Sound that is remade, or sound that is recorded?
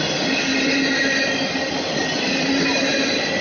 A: recorded